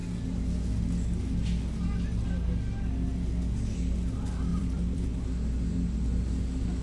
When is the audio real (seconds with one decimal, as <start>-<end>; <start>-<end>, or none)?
0.0-4.5; 5.2-6.8